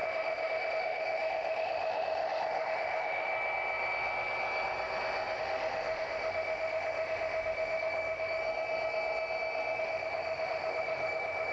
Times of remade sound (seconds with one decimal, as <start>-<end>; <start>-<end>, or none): 0.0-3.3; 5.4-8.4; 9.8-11.5

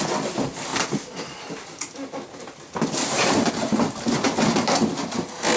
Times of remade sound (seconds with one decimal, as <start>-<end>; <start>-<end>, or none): none

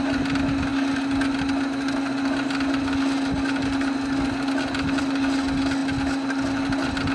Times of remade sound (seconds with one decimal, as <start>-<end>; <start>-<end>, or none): none

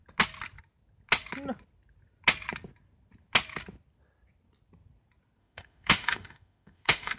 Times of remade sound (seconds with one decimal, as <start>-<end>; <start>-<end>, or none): 5.4-7.2

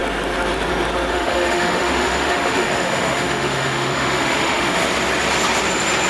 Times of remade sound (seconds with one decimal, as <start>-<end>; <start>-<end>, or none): 1.1-4.8